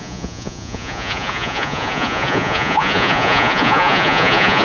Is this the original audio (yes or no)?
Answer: no